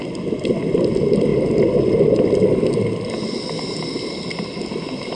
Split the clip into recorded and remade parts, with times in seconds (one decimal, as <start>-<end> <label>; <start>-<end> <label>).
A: 0.0-5.1 recorded